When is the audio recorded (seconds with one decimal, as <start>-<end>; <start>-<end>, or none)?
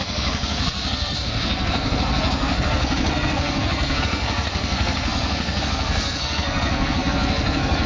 none